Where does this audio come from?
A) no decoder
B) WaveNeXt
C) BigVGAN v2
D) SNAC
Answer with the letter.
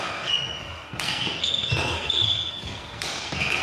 D